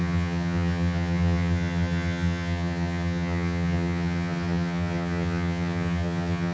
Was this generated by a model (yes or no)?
yes